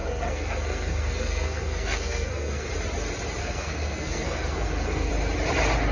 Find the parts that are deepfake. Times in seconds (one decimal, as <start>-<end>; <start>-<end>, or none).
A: 0.0-2.7; 3.4-5.1